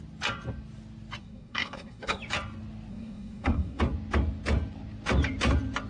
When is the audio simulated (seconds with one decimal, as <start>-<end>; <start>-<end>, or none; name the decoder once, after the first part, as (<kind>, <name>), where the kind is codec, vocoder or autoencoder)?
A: 1.2-2.2 (codec, SNAC); 2.9-3.8